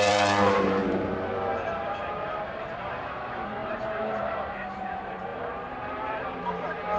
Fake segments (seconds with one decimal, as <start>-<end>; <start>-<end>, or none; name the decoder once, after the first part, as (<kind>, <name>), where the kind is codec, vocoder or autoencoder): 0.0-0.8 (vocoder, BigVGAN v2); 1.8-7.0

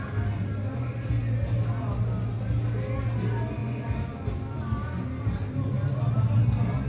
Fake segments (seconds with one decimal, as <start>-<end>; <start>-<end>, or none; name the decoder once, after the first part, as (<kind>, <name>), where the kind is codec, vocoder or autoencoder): none

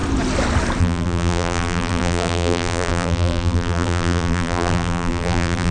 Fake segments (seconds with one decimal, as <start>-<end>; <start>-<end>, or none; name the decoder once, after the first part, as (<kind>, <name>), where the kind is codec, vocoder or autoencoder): 0.8-5.7 (vocoder, BigVGAN v2)

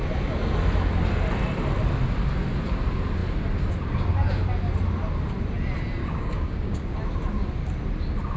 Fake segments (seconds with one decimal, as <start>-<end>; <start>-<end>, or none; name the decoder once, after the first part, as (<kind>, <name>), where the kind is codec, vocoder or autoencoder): 6.0-6.9 (codec, DAC)

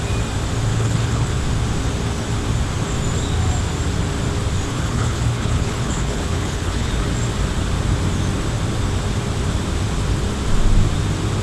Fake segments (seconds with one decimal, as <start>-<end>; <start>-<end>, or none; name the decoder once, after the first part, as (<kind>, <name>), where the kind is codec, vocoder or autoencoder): 0.7-1.4 (codec, HILCodec); 4.7-6.9

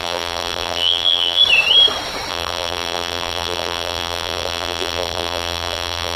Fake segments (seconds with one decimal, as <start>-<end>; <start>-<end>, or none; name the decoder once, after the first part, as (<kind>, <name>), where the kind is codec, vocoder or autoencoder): 0.0-1.4 (vocoder, BigVGAN v2); 2.3-6.2

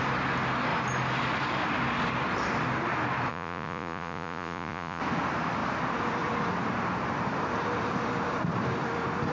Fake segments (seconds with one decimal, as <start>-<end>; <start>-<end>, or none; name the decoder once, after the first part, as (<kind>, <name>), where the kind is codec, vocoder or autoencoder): 3.3-5.0 (vocoder, Vocos)